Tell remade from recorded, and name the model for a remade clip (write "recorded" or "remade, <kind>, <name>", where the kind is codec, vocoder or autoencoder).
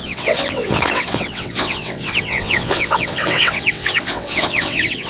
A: remade, vocoder, WaveNeXt